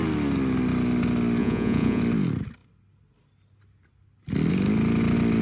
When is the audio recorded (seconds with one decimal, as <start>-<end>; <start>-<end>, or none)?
0.0-1.4; 2.0-5.4